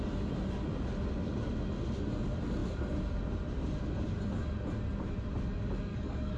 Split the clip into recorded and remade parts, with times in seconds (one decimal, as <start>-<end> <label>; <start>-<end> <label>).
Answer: 0.0-5.9 recorded; 5.9-6.4 remade